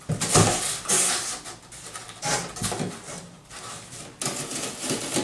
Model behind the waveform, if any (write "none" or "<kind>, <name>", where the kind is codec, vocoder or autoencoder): none